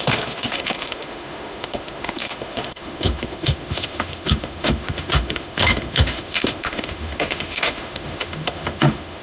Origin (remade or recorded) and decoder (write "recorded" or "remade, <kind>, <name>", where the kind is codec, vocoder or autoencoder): remade, autoencoder, DAC-VAE